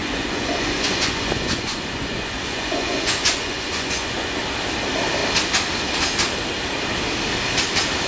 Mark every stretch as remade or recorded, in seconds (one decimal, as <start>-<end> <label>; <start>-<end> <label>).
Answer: 0.0-4.4 remade; 4.4-8.1 recorded